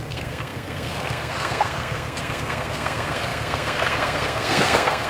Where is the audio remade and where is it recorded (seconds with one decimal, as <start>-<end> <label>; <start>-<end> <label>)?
0.0-5.1 remade

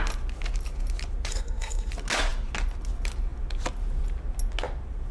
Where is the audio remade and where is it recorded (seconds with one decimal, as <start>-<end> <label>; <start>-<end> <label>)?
0.0-1.3 recorded; 1.3-1.9 remade; 1.9-5.1 recorded

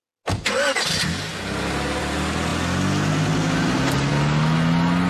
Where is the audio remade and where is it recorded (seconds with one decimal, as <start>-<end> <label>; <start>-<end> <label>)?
0.0-5.1 recorded

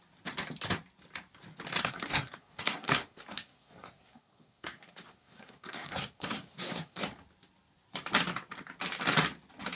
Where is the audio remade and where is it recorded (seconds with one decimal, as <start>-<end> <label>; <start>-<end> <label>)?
0.0-1.8 recorded; 1.8-7.0 remade; 7.0-9.7 recorded

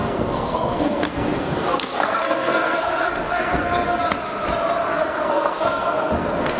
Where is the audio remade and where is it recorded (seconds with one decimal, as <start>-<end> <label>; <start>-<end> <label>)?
0.0-4.0 remade; 4.0-4.9 recorded; 4.9-6.6 remade